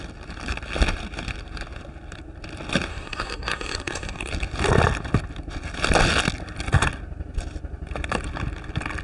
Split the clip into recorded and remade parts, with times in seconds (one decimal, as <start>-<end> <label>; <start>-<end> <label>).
0.0-2.9 recorded; 2.9-4.3 remade; 4.3-9.0 recorded